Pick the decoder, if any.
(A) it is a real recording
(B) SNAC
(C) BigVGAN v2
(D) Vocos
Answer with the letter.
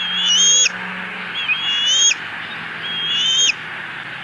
A